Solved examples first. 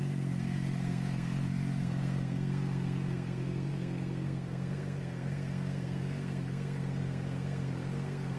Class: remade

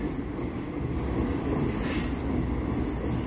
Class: recorded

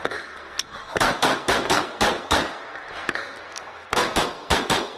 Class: remade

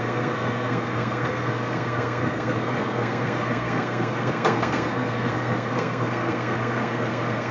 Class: remade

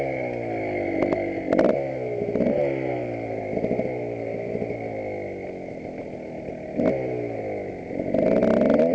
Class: recorded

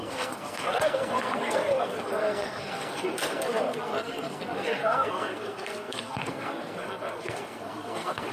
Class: remade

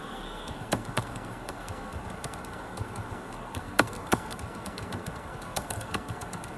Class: remade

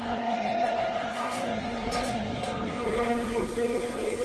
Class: remade